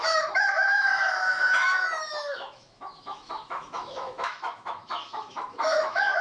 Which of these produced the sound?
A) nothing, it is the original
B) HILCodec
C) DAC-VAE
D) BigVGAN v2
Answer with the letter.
C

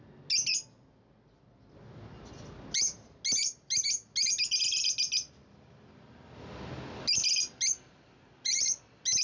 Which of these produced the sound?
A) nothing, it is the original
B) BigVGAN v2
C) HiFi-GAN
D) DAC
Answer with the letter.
A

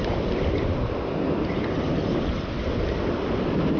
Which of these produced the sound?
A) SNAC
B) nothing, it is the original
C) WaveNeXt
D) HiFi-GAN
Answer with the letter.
B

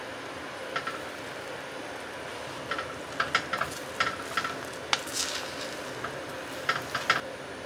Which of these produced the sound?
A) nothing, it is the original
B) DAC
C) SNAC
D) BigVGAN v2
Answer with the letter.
A